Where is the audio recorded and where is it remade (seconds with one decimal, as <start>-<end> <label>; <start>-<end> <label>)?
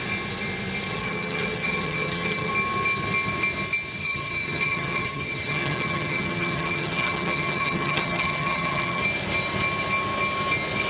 0.0-0.9 recorded; 0.9-2.5 remade; 2.5-4.0 recorded; 4.0-9.0 remade; 9.0-10.9 recorded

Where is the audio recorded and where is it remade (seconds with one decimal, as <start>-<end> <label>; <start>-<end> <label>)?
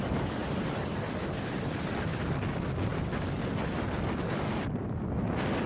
0.0-5.7 recorded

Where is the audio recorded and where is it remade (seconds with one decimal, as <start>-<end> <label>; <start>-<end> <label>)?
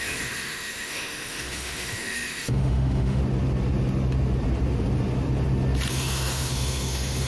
0.0-3.2 remade; 3.2-5.9 recorded; 5.9-7.3 remade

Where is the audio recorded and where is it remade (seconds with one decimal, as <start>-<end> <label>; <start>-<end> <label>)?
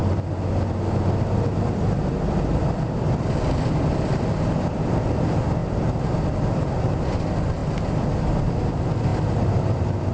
0.0-1.6 recorded; 1.6-9.1 remade; 9.1-9.6 recorded; 9.6-10.1 remade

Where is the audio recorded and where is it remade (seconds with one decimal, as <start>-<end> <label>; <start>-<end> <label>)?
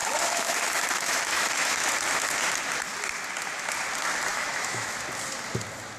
0.0-1.9 remade; 1.9-4.3 recorded; 4.3-4.9 remade; 4.9-6.0 recorded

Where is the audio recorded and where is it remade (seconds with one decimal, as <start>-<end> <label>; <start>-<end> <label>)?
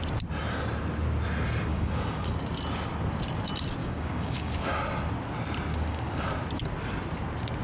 0.0-1.7 recorded; 1.7-2.5 remade; 2.5-3.8 recorded; 3.8-4.7 remade; 4.7-5.7 recorded; 5.7-6.3 remade; 6.3-7.6 recorded